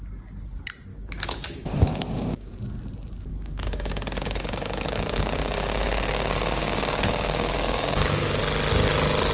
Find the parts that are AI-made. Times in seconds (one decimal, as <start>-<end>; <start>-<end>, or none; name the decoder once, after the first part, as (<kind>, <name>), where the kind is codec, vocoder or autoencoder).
0.9-2.5 (codec, DAC); 3.3-8.4